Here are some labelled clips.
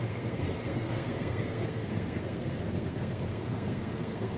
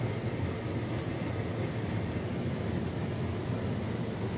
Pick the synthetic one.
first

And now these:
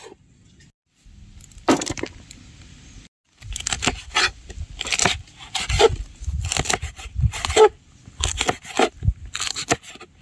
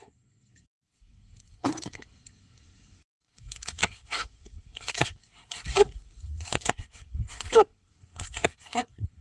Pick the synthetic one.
second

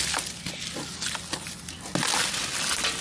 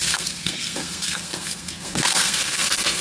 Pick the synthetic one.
second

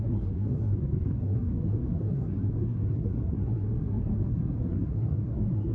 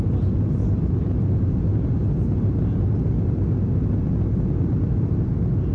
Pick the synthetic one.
first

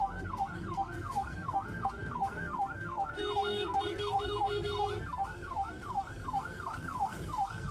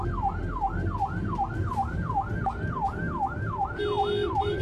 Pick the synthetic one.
first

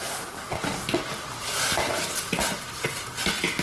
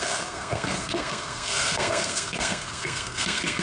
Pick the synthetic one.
second